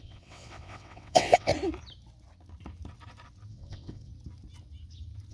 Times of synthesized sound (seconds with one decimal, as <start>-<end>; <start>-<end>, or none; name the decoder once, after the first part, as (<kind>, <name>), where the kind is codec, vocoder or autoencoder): 0.0-1.5 (vocoder, WaveNeXt); 3.5-4.1